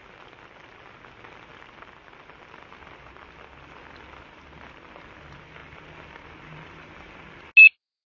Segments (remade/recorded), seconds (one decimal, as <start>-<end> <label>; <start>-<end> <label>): 0.0-8.1 recorded